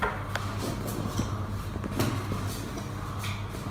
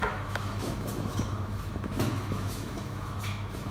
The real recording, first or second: first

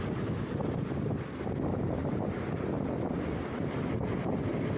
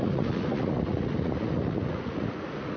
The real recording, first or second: first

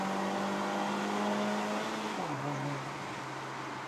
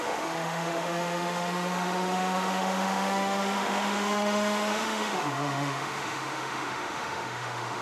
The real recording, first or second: first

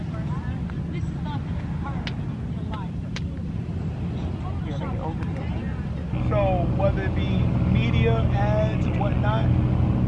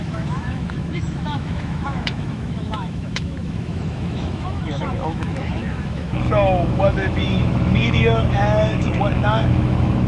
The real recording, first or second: first